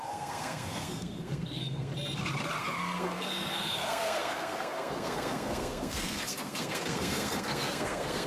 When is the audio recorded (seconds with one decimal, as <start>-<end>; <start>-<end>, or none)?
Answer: 1.9-2.6